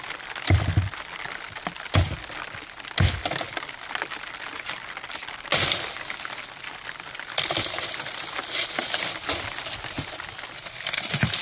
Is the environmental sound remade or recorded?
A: recorded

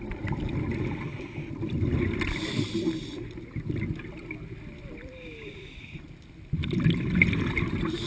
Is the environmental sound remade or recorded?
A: recorded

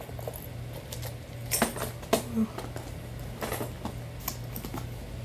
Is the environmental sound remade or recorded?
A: recorded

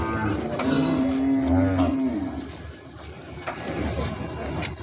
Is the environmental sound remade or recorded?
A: recorded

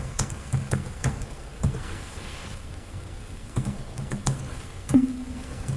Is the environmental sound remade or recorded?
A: remade